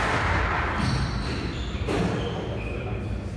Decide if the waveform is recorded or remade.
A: recorded